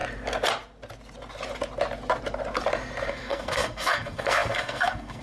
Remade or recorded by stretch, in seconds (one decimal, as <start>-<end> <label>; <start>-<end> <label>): 0.0-3.1 recorded; 3.1-5.2 remade